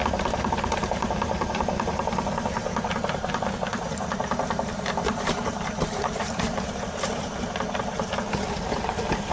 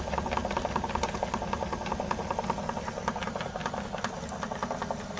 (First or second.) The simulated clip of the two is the first